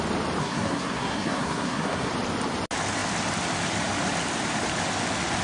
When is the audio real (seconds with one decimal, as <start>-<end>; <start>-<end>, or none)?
0.0-0.4; 2.1-5.4